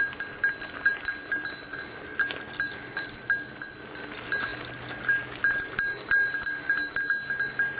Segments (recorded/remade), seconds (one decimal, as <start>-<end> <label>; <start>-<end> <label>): 0.0-7.8 recorded

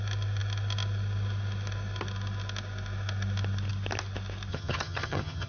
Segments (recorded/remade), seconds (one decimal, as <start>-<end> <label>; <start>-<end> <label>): 0.0-4.5 recorded; 4.5-5.5 remade

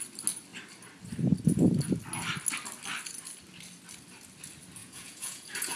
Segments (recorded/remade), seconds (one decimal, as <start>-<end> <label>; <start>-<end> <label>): 0.0-4.8 recorded; 4.8-5.8 remade

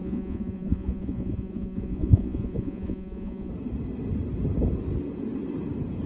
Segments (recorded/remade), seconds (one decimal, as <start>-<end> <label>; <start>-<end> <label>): 0.0-3.5 remade; 3.5-6.1 recorded